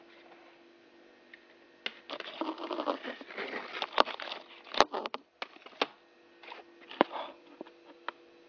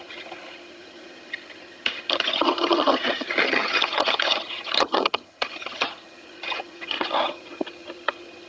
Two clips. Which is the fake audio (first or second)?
second